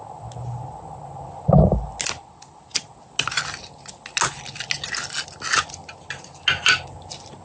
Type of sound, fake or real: real